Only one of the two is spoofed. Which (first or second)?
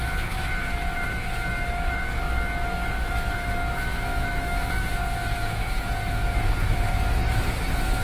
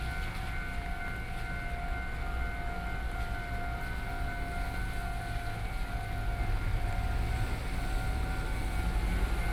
first